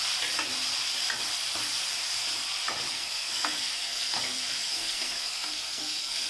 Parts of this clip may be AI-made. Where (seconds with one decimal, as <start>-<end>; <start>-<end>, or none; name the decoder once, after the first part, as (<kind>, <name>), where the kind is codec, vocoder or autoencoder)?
2.9-6.3 (codec, SNAC)